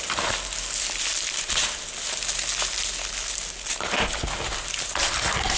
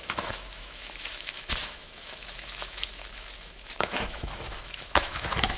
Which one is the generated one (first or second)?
second